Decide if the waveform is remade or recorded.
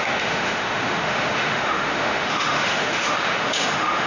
remade